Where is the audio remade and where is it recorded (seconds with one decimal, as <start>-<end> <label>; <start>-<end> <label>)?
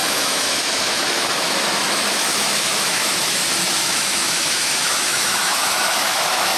0.0-3.4 remade; 3.4-3.8 recorded; 3.8-6.6 remade